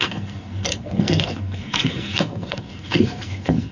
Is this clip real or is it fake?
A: fake